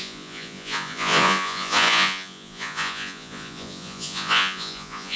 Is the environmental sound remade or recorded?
remade